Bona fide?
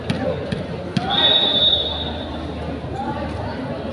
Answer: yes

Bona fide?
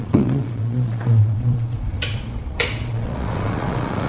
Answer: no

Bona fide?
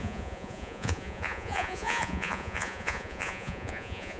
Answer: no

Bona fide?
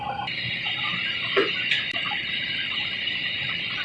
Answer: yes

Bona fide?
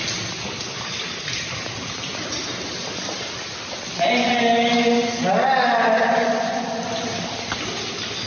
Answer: yes